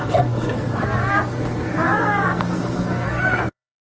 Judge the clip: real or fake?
fake